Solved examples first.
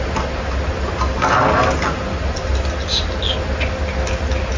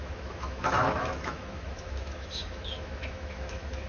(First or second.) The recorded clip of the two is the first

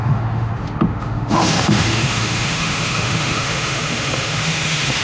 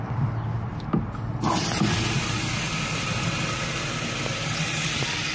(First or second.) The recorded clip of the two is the second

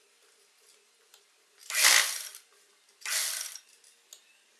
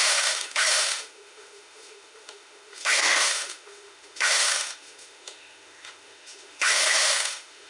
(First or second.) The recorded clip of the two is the first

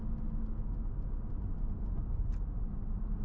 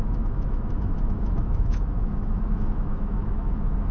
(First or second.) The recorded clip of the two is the first